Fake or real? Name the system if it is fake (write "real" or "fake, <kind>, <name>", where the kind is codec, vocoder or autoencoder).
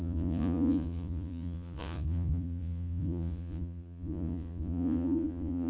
fake, vocoder, Vocos